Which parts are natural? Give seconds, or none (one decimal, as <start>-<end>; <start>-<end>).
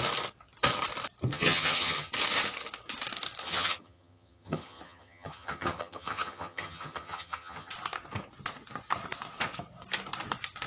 0.0-1.3; 2.1-3.4; 7.7-10.7